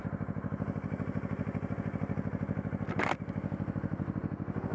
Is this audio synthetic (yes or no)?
no